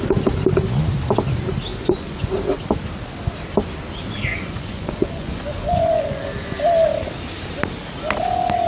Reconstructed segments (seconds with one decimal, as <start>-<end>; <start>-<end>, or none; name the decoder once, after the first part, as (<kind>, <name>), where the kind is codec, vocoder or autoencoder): 1.7-2.3 (vocoder, Vocos); 4.3-6.2